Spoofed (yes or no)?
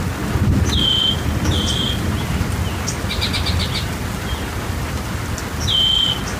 no